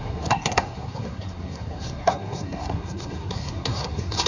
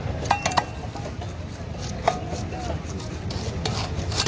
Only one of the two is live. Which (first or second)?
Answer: second